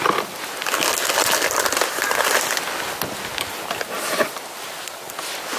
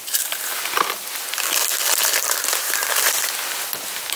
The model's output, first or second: second